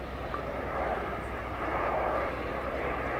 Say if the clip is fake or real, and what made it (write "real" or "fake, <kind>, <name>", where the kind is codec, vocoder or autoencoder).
real